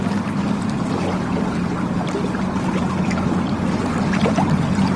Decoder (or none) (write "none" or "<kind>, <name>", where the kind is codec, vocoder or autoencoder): none